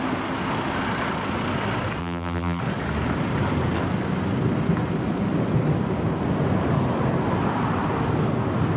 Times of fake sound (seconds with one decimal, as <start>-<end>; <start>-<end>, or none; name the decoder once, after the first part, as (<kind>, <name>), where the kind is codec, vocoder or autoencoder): 2.0-2.6 (vocoder, BigVGAN v2)